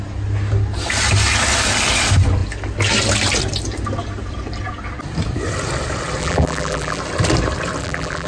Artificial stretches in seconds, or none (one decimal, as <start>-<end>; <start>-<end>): 6.2-7.0; 7.8-8.3

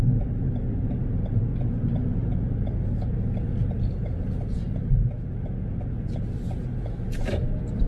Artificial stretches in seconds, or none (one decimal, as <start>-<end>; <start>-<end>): none

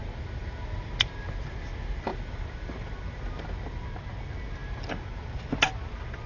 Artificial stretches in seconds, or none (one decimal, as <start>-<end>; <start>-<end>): 4.6-5.4

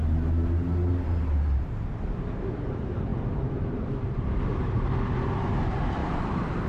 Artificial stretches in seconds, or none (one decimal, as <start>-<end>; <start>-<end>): 2.4-6.0